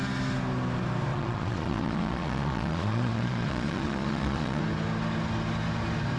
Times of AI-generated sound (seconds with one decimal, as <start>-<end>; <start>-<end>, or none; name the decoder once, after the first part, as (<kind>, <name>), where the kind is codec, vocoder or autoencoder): 1.1-4.6 (vocoder, Vocos)